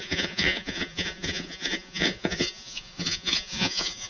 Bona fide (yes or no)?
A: no